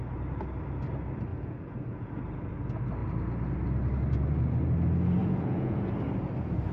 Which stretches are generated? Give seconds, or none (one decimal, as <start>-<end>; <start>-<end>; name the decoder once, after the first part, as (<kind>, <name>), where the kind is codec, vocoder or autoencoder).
1.3-2.1 (vocoder, Vocos); 5.2-5.9